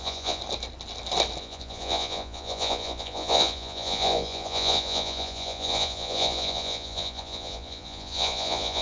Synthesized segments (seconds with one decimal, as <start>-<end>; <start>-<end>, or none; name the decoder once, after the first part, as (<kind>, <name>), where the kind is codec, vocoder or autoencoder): 0.0-0.4 (vocoder, Vocos); 1.4-8.8

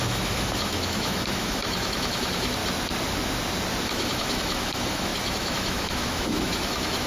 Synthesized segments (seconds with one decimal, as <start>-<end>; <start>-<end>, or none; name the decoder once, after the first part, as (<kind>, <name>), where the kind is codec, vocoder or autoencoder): 0.0-2.6 (autoencoder, DAC-VAE); 3.8-7.1

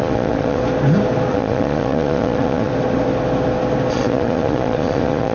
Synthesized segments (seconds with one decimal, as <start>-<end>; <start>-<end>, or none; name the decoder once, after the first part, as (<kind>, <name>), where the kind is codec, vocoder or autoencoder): 0.0-0.6 (vocoder, Vocos); 1.3-2.7; 3.9-5.3